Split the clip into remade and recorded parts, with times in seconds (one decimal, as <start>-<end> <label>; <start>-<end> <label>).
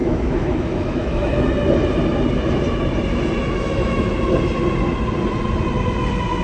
0.0-1.4 remade; 1.4-3.4 recorded; 3.4-4.1 remade; 4.1-6.4 recorded